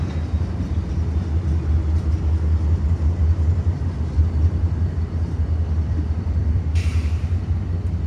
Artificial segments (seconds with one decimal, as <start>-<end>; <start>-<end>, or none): 4.2-7.4